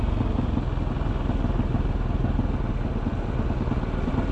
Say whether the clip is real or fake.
real